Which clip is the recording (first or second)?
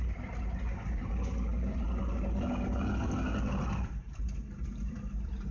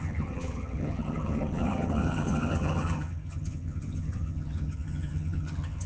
first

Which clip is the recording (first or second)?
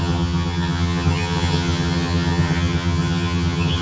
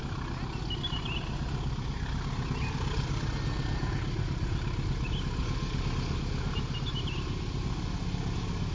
second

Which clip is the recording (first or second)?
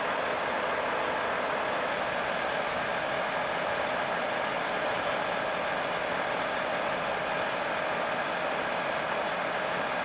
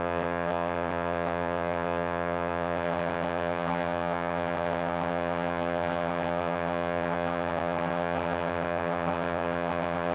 first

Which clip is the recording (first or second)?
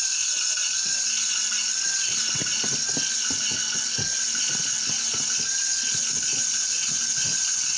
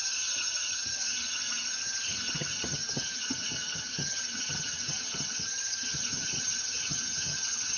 first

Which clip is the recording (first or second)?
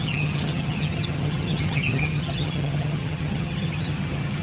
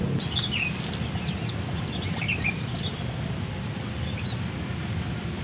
second